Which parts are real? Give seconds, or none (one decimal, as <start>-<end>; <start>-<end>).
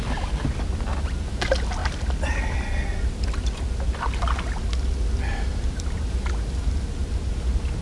0.0-7.8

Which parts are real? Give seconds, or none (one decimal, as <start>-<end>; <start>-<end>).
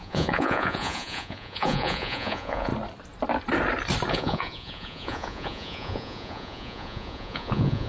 2.7-4.1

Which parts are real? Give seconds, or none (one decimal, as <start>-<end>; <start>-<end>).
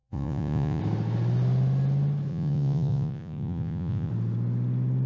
0.8-2.3; 4.1-5.1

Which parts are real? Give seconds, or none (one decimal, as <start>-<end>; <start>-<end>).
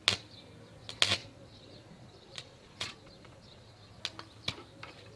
0.0-1.2; 4.0-5.2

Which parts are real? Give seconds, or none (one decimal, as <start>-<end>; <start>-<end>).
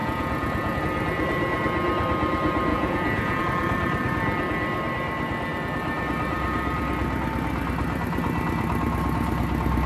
0.8-2.7; 3.4-9.9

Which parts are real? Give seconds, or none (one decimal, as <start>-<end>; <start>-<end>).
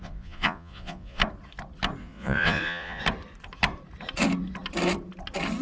1.2-2.0; 3.0-5.6